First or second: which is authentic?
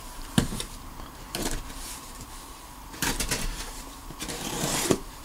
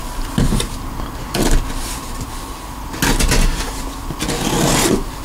second